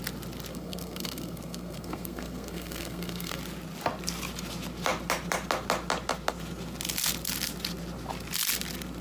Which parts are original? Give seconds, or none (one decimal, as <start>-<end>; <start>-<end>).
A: 0.0-0.5; 3.4-9.0